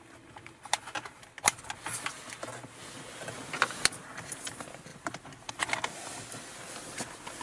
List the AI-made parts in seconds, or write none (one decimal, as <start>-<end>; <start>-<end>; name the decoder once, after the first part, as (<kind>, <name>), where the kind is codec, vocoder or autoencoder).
none